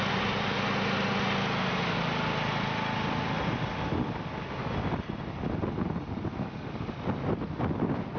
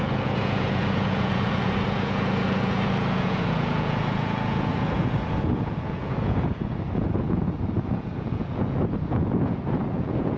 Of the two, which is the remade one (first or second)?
second